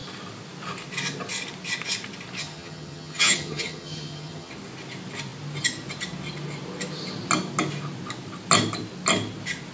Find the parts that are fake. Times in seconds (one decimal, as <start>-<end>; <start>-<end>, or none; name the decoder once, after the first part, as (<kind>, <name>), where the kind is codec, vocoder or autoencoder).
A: 2.4-4.5 (vocoder, HiFi-GAN)